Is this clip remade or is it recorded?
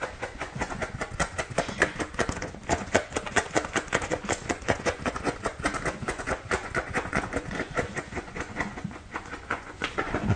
remade